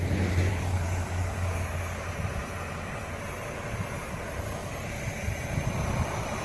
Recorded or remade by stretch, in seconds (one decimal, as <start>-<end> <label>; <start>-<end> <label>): 0.0-0.5 recorded; 0.5-2.0 remade; 2.0-6.4 recorded

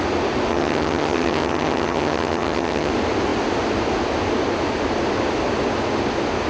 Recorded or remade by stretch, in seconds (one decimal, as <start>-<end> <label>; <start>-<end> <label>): 0.0-0.5 recorded; 0.5-2.9 remade; 2.9-6.5 recorded

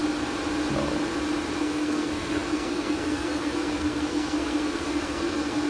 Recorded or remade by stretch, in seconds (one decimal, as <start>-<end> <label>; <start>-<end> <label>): 0.0-1.6 recorded; 1.6-5.7 remade